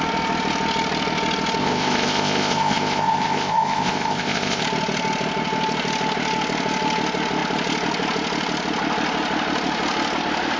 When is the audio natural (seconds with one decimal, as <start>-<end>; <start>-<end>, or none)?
0.0-1.6; 4.6-10.6